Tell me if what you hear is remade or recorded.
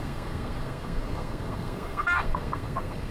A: remade